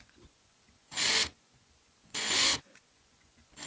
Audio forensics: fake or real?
fake